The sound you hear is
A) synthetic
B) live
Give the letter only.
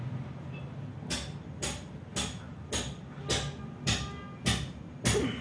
B